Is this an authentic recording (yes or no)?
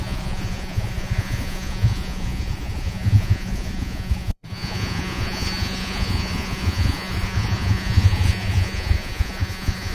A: no